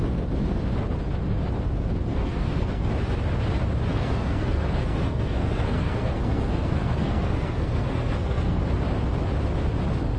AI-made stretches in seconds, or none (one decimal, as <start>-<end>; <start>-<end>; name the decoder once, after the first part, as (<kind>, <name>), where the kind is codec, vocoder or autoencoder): 2.1-2.9 (codec, SNAC); 3.9-8.6